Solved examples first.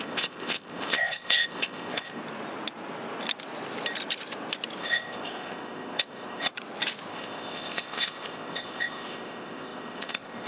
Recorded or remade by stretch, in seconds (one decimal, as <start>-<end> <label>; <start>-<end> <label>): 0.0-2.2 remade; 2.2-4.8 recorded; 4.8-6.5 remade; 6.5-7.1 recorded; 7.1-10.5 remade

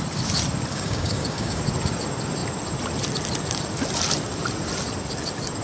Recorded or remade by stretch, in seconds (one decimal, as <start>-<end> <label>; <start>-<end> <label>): 0.0-0.7 recorded; 0.7-1.6 remade; 1.6-5.6 recorded

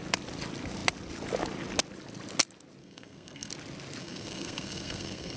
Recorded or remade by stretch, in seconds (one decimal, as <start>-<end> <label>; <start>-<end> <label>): 0.0-2.8 recorded; 2.8-3.5 remade; 3.5-4.0 recorded; 4.0-5.4 remade

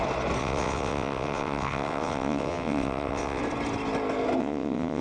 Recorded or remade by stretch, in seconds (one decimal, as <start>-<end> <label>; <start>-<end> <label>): 0.0-0.4 recorded; 0.4-3.4 remade; 3.4-4.4 recorded; 4.4-5.0 remade

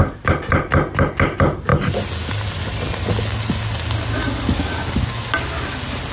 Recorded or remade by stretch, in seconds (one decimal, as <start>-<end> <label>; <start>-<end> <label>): 0.0-6.1 recorded

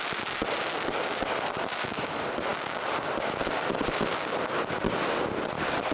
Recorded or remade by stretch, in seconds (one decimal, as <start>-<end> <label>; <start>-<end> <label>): 0.0-5.9 recorded